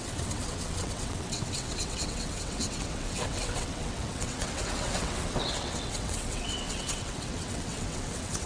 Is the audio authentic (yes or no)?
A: no